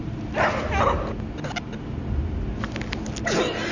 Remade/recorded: recorded